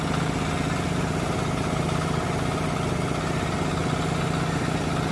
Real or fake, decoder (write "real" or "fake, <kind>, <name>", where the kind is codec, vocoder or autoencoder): real